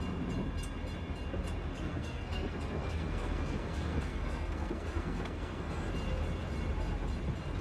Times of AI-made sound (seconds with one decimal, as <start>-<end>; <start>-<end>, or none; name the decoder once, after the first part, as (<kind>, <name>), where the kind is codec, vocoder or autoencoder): 1.7-5.9 (codec, SNAC)